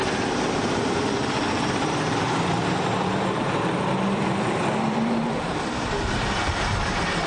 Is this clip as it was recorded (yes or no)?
no